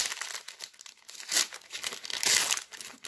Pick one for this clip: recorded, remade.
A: recorded